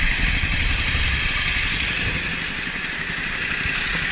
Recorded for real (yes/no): yes